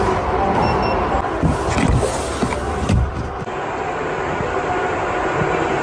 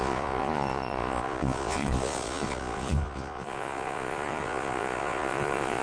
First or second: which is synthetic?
second